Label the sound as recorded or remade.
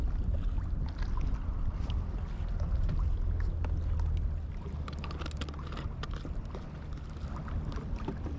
recorded